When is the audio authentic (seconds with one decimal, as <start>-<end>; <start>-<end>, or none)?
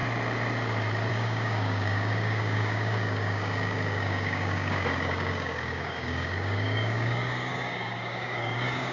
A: 0.0-1.1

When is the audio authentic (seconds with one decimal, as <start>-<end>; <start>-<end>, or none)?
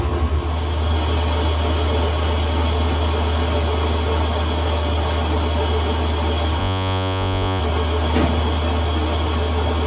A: 0.0-6.6; 7.6-9.9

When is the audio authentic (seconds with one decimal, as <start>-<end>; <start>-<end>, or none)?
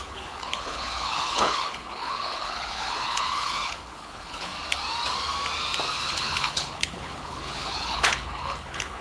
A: 4.5-5.9